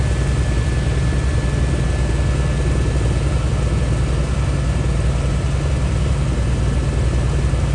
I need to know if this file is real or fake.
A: real